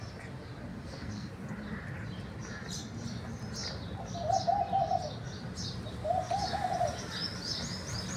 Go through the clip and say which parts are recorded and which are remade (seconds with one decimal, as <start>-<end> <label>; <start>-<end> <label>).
0.0-0.7 recorded; 0.7-1.3 remade; 1.3-8.2 recorded